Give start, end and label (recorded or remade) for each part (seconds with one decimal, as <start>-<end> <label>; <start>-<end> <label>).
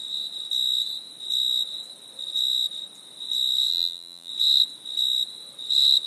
0.0-3.7 recorded; 3.7-4.3 remade; 4.3-6.1 recorded